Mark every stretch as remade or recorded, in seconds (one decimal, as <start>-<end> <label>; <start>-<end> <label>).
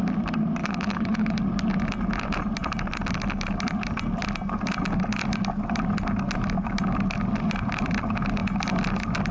0.0-0.6 recorded; 0.6-1.4 remade; 1.4-9.3 recorded